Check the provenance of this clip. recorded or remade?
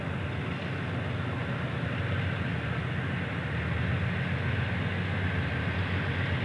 recorded